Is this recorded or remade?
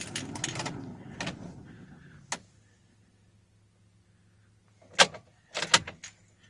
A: recorded